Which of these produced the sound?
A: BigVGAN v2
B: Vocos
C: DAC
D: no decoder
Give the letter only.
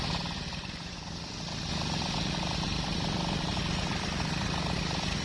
A